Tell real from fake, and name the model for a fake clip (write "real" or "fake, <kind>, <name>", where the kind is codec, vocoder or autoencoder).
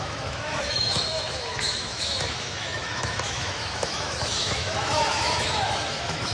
fake, autoencoder, DAC-VAE